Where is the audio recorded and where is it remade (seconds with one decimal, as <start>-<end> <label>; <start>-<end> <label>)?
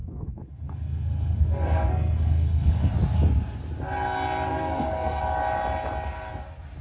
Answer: 0.0-2.9 remade; 2.9-4.5 recorded; 4.5-5.2 remade; 5.2-6.8 recorded